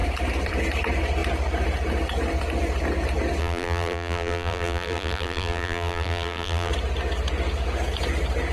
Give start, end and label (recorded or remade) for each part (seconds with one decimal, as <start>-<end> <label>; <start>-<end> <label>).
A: 0.0-3.4 recorded; 3.4-6.7 remade; 6.7-8.5 recorded